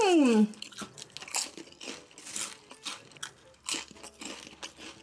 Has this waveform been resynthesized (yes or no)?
no